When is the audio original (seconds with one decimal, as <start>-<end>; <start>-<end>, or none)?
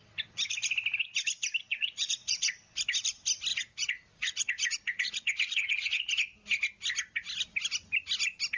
0.0-1.7; 2.5-3.5; 6.1-8.6